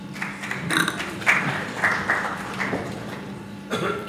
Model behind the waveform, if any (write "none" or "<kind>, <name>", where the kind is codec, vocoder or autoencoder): vocoder, BigVGAN v2